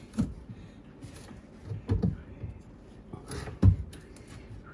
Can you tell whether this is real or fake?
real